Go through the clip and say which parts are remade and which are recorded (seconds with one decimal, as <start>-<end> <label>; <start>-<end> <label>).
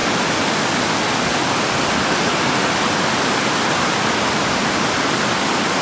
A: 0.0-5.8 recorded